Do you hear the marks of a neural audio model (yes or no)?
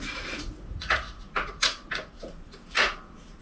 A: yes